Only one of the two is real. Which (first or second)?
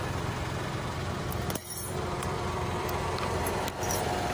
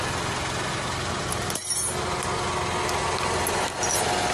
second